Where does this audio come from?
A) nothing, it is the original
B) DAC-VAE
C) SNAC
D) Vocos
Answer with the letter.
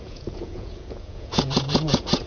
D